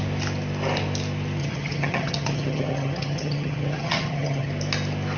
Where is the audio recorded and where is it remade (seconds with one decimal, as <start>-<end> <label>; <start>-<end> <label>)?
0.0-1.4 recorded; 1.4-4.5 remade; 4.5-5.2 recorded